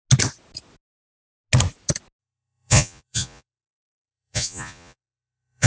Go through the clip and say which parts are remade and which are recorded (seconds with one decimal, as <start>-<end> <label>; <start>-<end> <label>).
0.0-2.2 recorded; 2.2-5.7 remade